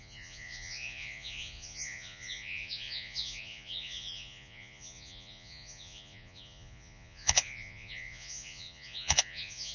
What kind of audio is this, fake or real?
fake